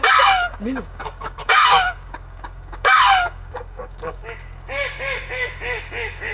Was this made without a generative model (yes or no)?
no